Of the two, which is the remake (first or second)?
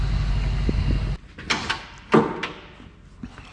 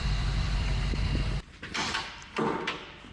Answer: second